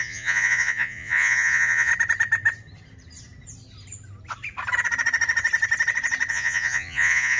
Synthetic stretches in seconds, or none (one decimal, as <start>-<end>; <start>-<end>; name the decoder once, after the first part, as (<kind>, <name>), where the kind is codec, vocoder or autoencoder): 0.0-1.9 (vocoder, Vocos); 6.3-7.4

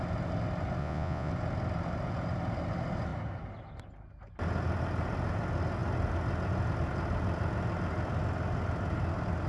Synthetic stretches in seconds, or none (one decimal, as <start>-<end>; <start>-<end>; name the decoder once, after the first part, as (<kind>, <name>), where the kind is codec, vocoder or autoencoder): 0.8-1.3 (vocoder, Vocos)

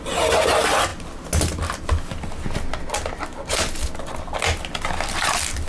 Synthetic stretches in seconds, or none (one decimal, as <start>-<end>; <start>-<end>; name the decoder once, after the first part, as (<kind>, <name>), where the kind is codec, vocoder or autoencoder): none

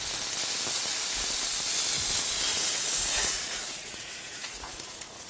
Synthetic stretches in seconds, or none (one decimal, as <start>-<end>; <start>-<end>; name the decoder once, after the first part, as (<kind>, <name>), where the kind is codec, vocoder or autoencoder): 2.5-5.3 (vocoder, Vocos)

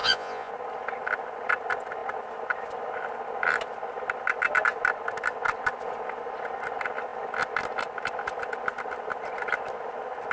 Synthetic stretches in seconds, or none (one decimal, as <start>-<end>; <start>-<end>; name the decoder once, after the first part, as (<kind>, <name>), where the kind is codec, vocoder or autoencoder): 0.0-0.5 (vocoder, Vocos)

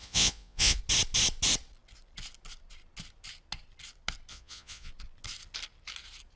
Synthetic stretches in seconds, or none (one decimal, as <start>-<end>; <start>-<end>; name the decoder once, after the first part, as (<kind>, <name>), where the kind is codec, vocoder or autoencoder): 0.0-0.8 (vocoder, Vocos); 4.3-4.9

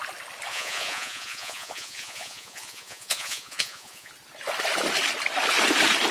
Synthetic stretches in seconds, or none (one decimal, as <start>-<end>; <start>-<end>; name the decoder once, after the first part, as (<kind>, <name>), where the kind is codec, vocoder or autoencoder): 0.5-4.1 (vocoder, Vocos)